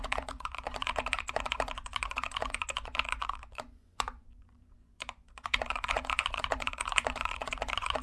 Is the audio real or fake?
fake